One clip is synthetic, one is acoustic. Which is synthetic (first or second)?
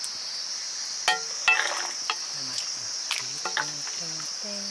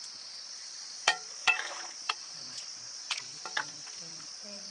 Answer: second